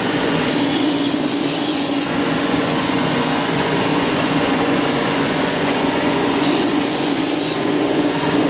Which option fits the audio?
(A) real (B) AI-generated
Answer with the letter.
B